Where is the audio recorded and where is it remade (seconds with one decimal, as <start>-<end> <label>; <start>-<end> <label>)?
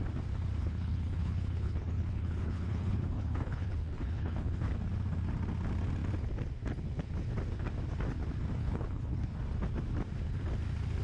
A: 0.0-0.6 recorded; 0.6-4.7 remade; 4.7-8.6 recorded; 8.6-9.4 remade; 9.4-11.0 recorded